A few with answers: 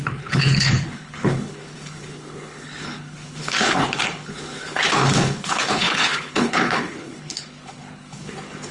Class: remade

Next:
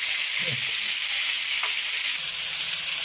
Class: recorded